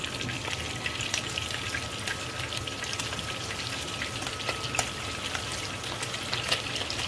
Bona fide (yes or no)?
yes